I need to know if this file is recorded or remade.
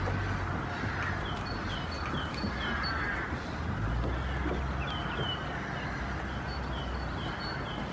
recorded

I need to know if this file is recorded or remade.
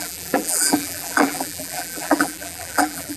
remade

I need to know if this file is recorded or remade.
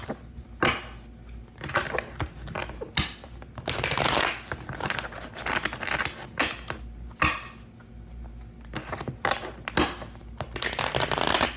recorded